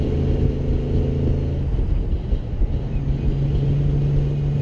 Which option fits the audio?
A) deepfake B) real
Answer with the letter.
B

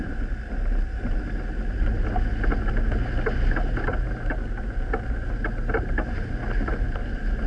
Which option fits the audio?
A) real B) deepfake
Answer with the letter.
A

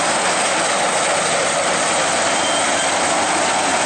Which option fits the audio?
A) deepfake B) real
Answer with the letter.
B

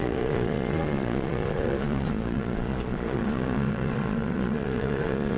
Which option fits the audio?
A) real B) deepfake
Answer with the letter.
B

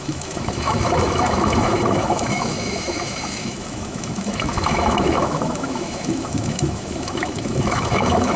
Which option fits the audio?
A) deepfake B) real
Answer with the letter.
A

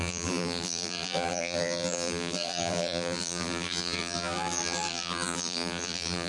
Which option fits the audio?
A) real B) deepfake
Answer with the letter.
B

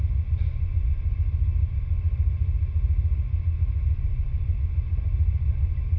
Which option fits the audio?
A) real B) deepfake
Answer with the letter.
A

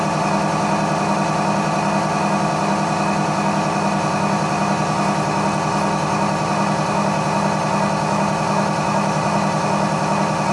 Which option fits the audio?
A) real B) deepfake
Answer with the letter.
A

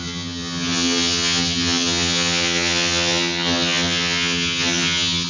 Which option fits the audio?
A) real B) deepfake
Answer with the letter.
B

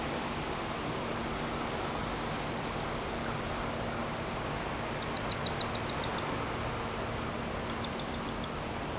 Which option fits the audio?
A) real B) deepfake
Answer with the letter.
A